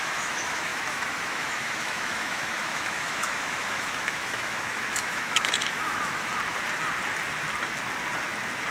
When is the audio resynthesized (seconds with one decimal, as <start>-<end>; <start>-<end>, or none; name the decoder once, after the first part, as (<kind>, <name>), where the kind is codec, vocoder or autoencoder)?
0.0-6.3 (autoencoder, DAC-VAE)